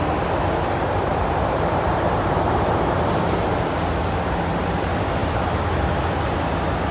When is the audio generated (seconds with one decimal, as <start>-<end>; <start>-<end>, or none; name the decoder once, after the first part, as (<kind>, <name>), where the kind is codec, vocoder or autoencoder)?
1.1-2.7 (vocoder, BigVGAN v2)